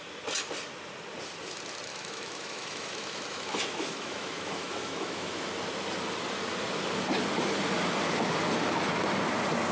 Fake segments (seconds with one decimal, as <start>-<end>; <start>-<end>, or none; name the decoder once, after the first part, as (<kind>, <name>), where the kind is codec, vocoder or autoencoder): 1.9-5.5 (autoencoder, DAC-VAE)